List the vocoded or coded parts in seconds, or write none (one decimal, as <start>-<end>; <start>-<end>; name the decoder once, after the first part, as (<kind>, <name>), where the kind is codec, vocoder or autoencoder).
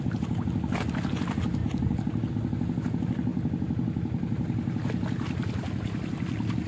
none